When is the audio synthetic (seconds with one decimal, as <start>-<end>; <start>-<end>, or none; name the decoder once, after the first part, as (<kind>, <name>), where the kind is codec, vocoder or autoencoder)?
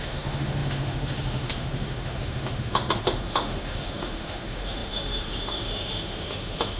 0.0-6.8 (autoencoder, DAC-VAE)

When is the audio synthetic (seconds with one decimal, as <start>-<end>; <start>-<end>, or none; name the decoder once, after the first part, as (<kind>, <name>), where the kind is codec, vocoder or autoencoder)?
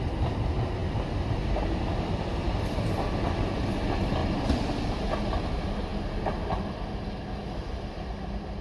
none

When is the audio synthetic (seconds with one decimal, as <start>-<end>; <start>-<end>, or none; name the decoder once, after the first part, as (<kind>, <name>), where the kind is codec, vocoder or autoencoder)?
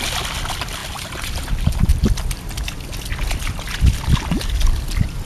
0.8-1.4 (vocoder, BigVGAN v2)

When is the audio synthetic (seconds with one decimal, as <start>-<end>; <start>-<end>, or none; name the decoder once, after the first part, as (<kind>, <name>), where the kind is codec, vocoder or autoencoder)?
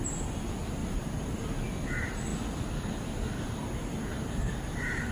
0.8-1.5 (vocoder, BigVGAN v2); 4.1-5.1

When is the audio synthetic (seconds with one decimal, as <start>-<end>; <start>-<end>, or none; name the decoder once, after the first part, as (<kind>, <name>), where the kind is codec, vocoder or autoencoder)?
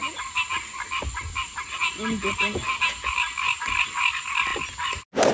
none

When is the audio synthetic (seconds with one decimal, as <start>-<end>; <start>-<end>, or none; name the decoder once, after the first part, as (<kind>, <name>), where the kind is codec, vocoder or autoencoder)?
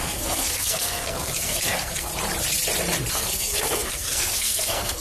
0.0-2.1 (codec, SNAC); 3.1-5.0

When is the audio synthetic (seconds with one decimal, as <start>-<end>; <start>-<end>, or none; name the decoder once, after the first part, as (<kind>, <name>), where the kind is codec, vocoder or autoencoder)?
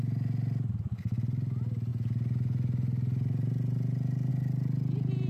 none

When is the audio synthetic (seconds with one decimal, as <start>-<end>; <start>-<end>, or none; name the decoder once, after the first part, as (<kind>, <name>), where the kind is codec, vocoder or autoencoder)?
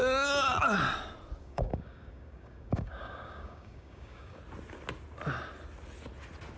1.4-4.4 (codec, DAC)